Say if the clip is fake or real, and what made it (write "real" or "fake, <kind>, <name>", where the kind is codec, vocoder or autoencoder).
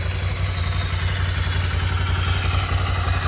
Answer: real